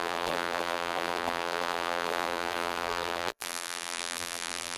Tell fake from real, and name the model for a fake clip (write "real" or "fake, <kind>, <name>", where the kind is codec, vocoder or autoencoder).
fake, vocoder, BigVGAN v2